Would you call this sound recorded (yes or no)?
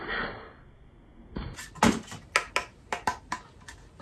yes